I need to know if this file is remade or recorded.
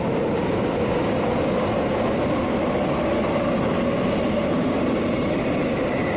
recorded